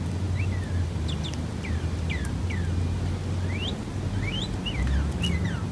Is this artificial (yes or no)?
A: no